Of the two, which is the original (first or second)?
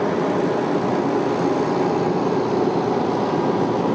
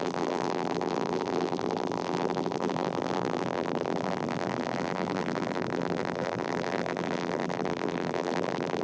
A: first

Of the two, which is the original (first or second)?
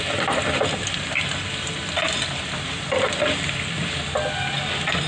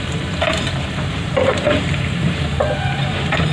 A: first